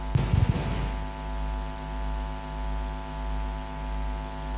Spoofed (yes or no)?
no